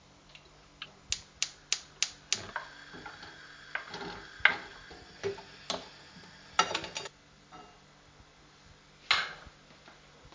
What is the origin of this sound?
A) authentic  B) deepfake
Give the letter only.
A